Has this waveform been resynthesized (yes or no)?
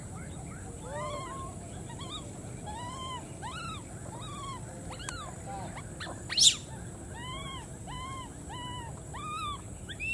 no